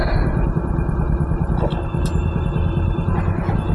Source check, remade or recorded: recorded